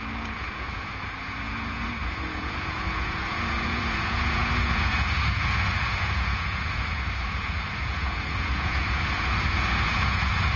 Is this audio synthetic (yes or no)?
yes